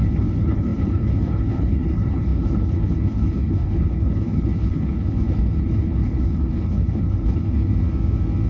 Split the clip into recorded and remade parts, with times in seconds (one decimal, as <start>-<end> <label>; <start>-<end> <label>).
0.0-7.7 remade; 7.7-8.5 recorded